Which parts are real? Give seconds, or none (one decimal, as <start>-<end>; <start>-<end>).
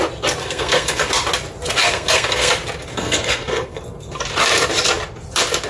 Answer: 0.0-0.4; 1.1-1.8; 2.5-2.9; 3.8-5.7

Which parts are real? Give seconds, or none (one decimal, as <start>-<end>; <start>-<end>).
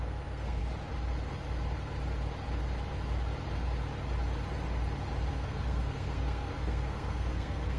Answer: 0.6-5.3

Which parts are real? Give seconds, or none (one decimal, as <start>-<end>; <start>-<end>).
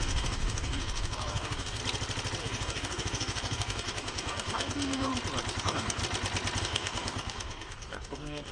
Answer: 1.8-2.4; 5.1-5.6; 6.0-6.6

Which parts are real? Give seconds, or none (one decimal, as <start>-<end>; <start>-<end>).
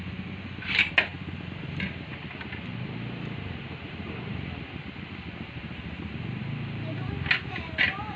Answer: 0.0-1.1; 5.9-6.4; 6.9-8.2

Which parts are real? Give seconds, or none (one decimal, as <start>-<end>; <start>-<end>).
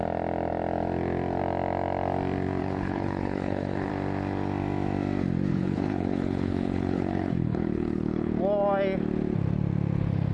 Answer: 0.0-2.6; 3.9-5.5; 8.3-10.3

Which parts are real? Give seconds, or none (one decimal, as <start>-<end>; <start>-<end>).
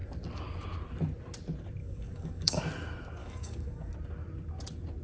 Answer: 0.0-1.8; 2.6-3.2; 3.9-5.0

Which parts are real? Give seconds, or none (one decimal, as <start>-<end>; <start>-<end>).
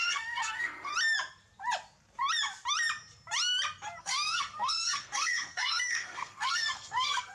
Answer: 0.9-4.0